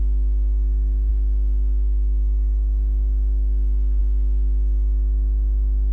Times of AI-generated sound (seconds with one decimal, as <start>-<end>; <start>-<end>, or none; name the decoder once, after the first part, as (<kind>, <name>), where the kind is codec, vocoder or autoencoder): 0.0-5.9 (autoencoder, DAC-VAE)